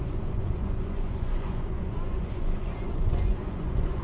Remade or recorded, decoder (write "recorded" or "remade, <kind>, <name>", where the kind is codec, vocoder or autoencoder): remade, vocoder, Vocos